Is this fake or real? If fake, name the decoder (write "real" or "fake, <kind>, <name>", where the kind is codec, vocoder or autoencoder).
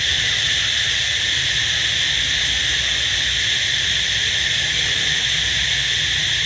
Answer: real